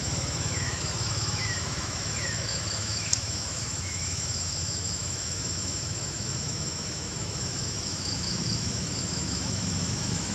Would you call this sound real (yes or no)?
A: no